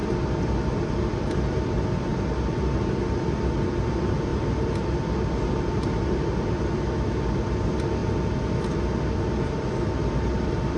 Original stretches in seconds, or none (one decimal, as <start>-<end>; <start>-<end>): 0.0-10.8

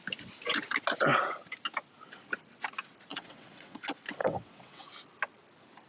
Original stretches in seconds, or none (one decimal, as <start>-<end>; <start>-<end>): 0.0-3.1; 3.8-4.2; 4.9-5.9

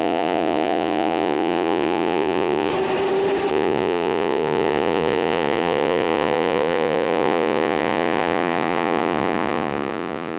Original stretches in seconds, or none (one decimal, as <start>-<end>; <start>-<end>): 2.7-3.5

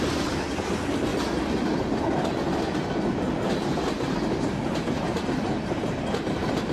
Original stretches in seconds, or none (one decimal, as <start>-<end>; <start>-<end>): 0.0-6.7

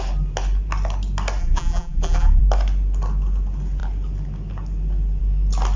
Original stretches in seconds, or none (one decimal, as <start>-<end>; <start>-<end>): 0.0-1.4; 2.4-5.8

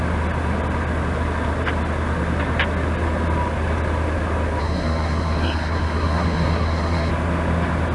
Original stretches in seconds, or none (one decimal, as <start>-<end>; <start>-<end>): 0.0-4.6; 7.1-7.9

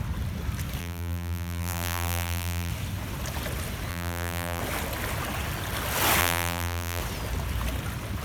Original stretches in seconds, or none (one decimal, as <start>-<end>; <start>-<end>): 0.0-0.8; 2.7-3.9; 4.6-6.2; 7.0-8.2